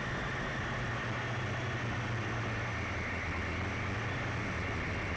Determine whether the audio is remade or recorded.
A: recorded